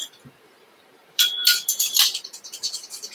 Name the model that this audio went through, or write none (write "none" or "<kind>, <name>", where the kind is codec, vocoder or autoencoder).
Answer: vocoder, BigVGAN v2